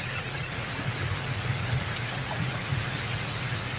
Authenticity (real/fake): fake